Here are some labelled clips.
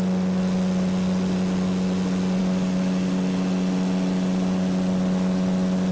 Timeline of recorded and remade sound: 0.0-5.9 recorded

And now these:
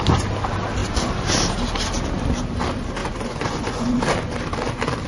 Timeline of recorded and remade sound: 0.0-3.0 recorded; 3.0-4.0 remade; 4.0-5.1 recorded

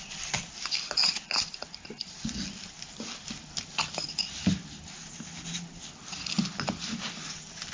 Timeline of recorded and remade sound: 0.0-7.7 recorded

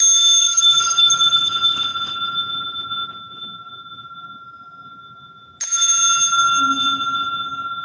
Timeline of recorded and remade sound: 0.0-0.4 recorded; 0.4-1.4 remade; 1.4-7.8 recorded

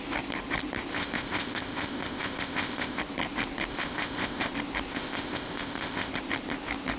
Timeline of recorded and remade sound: 0.0-0.9 recorded; 0.9-3.0 remade; 3.0-3.7 recorded; 3.7-4.5 remade; 4.5-4.9 recorded; 4.9-6.1 remade; 6.1-7.0 recorded

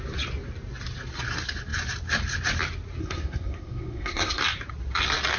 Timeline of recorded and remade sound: 0.0-3.0 recorded; 3.0-4.4 remade; 4.4-5.4 recorded

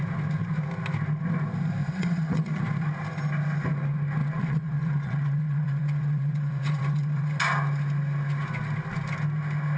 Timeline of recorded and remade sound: 0.0-1.8 recorded; 1.8-2.6 remade; 2.6-4.2 recorded; 4.2-7.4 remade; 7.4-9.8 recorded